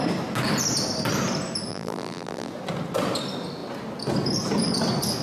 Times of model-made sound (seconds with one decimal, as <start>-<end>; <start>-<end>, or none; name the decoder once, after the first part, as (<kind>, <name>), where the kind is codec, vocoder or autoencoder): 1.7-2.5 (vocoder, BigVGAN v2)

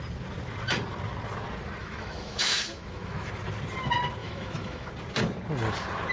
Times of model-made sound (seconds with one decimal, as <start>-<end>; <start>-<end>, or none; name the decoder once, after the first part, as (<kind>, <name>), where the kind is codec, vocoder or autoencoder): 1.8-3.3 (autoencoder, DAC-VAE); 4.2-4.9

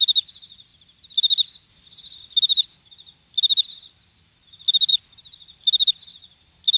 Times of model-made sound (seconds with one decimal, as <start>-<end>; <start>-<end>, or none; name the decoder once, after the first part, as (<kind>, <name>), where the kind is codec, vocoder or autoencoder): none

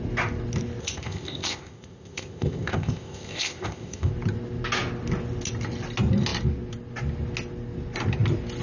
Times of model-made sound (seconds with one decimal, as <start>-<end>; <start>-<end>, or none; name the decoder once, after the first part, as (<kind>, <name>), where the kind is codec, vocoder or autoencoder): 0.8-4.1 (codec, ZipCodec)

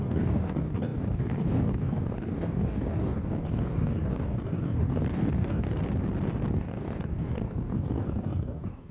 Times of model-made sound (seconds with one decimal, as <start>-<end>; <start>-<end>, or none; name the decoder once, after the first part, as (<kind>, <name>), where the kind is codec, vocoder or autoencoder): 0.0-5.8 (codec, DAC); 6.5-8.9

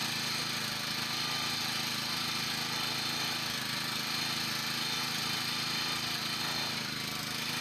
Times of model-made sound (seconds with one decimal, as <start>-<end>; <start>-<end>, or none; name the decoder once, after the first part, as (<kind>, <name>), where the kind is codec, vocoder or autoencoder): none

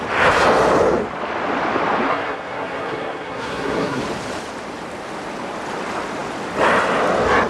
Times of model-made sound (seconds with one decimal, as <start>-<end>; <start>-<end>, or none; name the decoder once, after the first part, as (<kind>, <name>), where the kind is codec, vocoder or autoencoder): 2.1-4.0 (codec, SNAC)

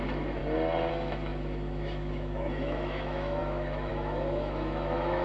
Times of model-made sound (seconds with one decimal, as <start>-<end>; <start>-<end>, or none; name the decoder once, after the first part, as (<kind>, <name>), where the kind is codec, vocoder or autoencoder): 0.0-0.4 (autoencoder, DAC-VAE); 0.9-5.2